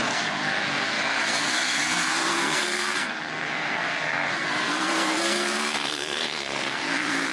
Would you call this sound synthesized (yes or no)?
yes